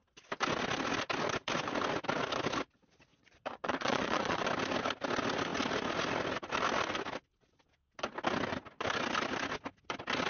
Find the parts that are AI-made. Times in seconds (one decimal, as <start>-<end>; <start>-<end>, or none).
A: 3.1-4.4